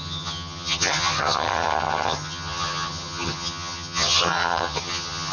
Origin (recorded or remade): remade